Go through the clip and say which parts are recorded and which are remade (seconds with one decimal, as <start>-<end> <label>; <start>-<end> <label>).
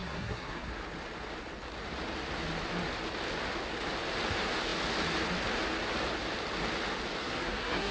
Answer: 0.0-0.7 remade; 0.7-7.2 recorded; 7.2-7.9 remade